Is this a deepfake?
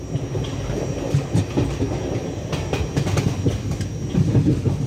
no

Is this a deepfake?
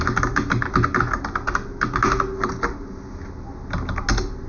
no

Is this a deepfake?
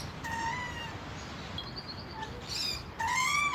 no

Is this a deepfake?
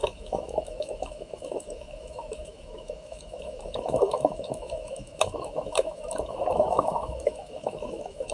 yes